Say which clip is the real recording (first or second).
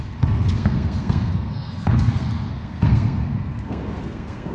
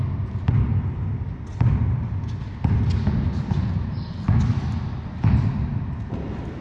second